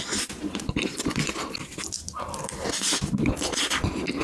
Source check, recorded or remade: recorded